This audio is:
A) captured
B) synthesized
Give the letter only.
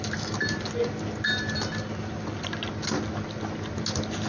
A